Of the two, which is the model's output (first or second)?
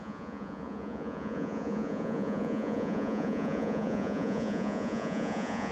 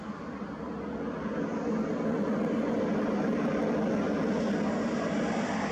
first